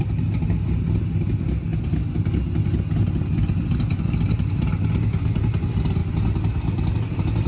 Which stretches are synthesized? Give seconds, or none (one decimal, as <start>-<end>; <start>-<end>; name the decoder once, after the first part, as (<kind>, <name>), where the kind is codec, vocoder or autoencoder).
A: none